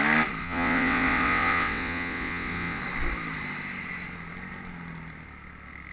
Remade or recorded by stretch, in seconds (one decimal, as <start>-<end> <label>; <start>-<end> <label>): 0.0-0.4 recorded; 0.4-2.8 remade; 2.8-5.9 recorded